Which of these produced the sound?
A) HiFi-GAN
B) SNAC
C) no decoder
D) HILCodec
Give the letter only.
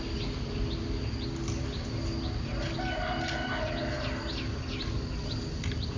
C